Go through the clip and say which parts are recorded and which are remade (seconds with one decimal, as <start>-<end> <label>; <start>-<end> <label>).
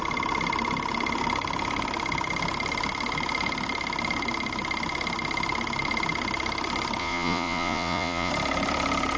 0.0-7.0 recorded; 7.0-8.3 remade; 8.3-9.2 recorded